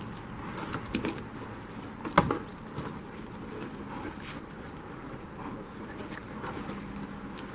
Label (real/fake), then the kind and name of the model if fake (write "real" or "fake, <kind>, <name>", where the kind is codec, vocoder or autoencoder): real